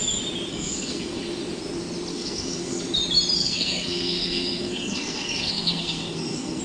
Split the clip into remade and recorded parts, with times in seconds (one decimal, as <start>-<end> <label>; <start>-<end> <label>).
0.0-0.5 recorded; 0.5-1.2 remade; 1.2-2.1 recorded; 2.1-2.8 remade; 2.8-3.4 recorded; 3.4-6.6 remade